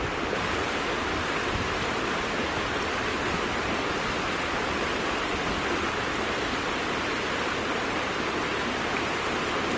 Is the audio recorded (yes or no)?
yes